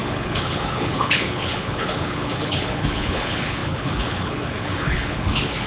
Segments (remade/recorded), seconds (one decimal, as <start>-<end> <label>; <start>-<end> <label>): 0.0-5.7 remade